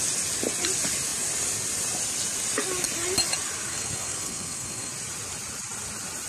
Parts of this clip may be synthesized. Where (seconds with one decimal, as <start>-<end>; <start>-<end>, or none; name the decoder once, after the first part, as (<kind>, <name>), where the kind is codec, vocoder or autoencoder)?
3.7-4.9 (codec, SNAC)